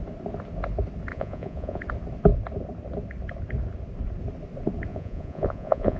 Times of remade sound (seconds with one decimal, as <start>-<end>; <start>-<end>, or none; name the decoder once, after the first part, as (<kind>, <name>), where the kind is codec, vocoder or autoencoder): 1.1-1.8 (vocoder, Vocos); 4.9-6.0